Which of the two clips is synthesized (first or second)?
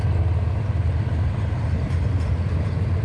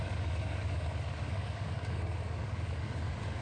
second